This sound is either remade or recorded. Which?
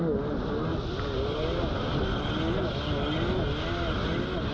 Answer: recorded